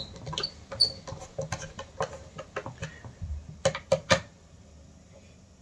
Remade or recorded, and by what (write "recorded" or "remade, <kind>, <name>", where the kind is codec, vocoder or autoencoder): recorded